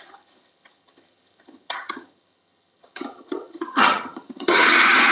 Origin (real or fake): fake